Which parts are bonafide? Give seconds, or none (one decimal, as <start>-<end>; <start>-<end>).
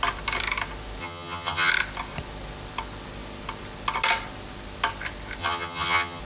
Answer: 0.0-1.0; 1.7-5.4